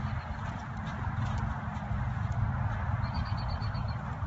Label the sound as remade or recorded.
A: recorded